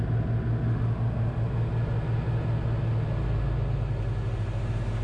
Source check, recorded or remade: recorded